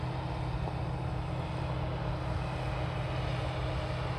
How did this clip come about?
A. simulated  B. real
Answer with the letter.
B